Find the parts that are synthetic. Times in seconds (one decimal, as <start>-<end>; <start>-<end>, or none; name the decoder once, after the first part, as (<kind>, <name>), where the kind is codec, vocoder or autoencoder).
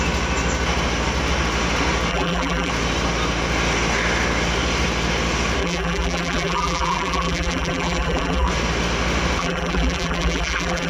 2.1-2.7 (vocoder, BigVGAN v2); 5.6-8.5; 9.4-10.9